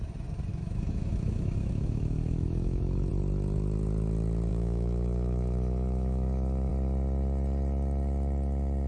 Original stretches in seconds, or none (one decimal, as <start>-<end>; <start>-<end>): 0.0-0.5; 3.1-4.5; 6.7-8.9